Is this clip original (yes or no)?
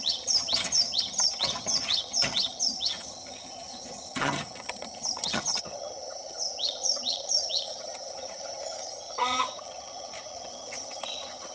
no